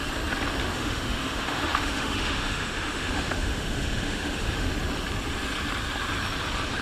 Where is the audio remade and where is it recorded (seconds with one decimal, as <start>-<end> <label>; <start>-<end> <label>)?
0.0-0.6 recorded; 0.6-4.7 remade; 4.7-6.8 recorded

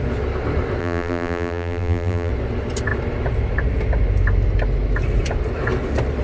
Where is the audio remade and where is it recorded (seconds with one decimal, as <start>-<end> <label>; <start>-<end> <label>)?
0.0-0.8 recorded; 0.8-2.3 remade; 2.3-6.2 recorded

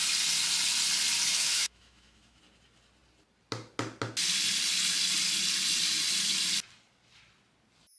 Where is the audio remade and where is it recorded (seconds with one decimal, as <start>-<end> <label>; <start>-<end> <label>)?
0.0-1.3 recorded; 1.3-2.4 remade; 2.4-8.0 recorded

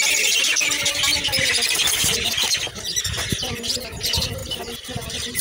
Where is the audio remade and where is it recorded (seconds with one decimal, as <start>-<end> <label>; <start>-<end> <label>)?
0.0-5.4 recorded

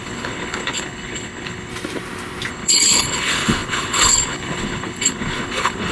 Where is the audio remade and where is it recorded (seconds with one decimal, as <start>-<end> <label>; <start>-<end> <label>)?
0.0-1.7 remade; 1.7-2.5 recorded; 2.5-5.9 remade

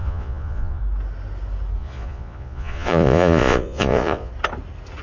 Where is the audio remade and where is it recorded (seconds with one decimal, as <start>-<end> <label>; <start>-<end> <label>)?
0.0-0.8 remade; 0.8-1.8 recorded; 1.8-4.3 remade; 4.3-5.0 recorded

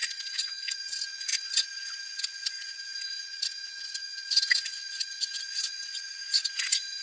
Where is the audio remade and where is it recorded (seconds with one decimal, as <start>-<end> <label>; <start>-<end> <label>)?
0.0-7.0 remade

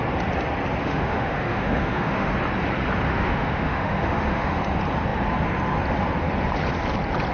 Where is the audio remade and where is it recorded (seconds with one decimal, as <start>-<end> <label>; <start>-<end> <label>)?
0.0-0.8 recorded; 0.8-2.3 remade; 2.3-3.1 recorded; 3.1-4.6 remade; 4.6-7.3 recorded